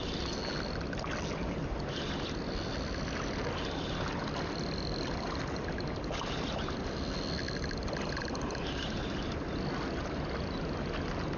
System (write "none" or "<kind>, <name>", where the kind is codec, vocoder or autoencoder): none